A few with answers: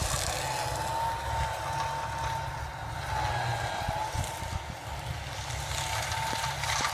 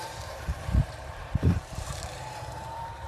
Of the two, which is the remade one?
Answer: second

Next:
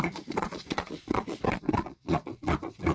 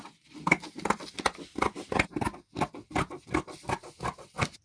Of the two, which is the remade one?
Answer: first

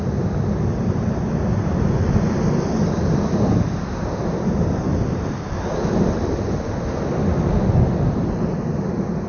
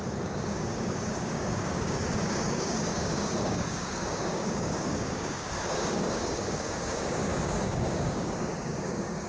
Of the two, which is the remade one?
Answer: second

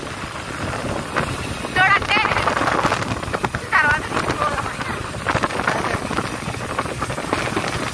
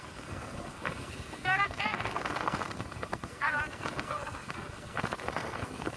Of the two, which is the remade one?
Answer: second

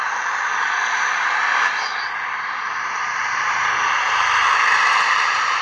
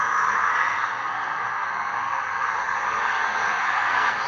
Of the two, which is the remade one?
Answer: second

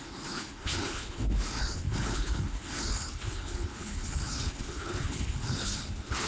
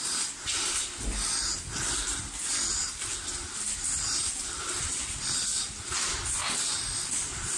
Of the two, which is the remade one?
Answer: first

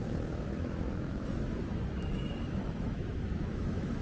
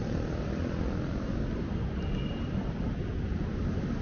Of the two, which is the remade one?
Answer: first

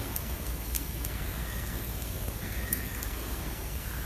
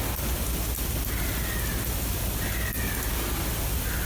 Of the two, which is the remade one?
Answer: first